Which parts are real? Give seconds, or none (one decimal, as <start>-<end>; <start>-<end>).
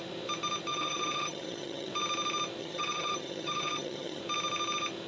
0.0-0.7; 1.9-2.6; 4.2-5.1